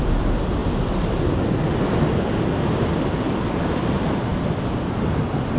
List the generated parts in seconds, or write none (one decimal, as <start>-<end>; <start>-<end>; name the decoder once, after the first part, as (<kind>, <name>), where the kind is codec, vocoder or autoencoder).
0.0-0.6 (vocoder, BigVGAN v2); 3.6-5.6